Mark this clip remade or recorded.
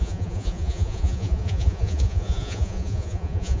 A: remade